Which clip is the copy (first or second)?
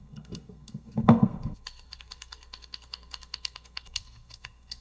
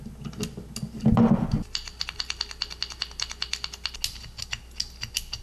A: first